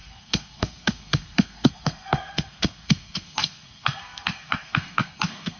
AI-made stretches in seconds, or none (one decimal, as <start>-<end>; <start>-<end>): 0.0-5.6